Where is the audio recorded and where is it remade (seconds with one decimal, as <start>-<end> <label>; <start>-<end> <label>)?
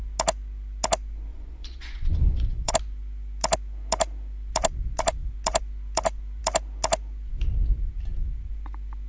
0.0-1.3 recorded; 1.3-2.7 remade; 2.7-9.1 recorded